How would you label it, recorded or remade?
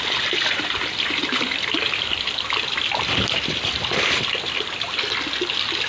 recorded